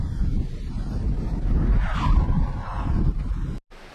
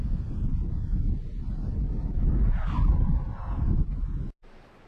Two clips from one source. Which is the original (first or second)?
second